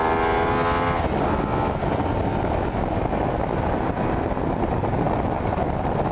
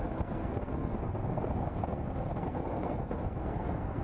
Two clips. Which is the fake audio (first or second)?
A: second